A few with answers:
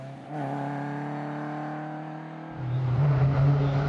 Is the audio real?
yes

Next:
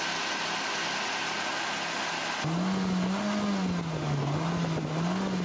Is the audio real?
yes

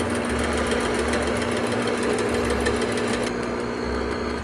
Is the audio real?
yes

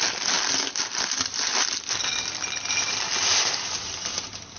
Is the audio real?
yes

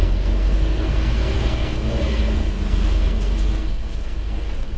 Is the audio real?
no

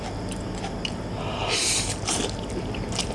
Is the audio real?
yes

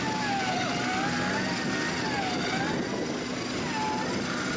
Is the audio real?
yes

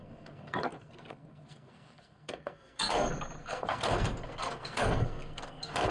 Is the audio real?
no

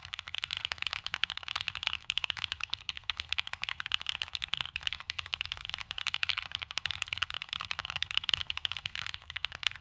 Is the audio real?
no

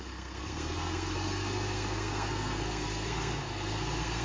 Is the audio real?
no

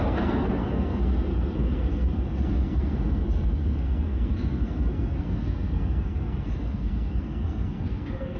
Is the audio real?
no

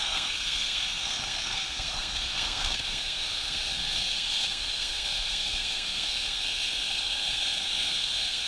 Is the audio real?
no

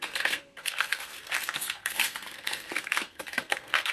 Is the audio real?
no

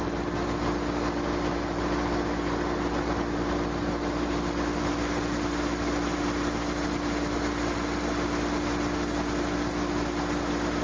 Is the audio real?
yes